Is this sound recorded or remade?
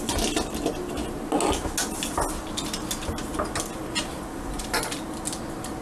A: recorded